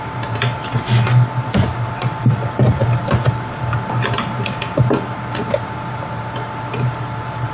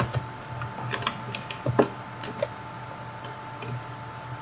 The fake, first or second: first